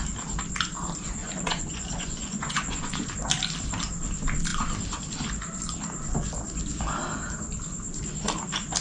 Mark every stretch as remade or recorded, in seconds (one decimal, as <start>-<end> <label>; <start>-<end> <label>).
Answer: 0.0-1.2 recorded; 1.2-3.1 remade; 3.1-8.8 recorded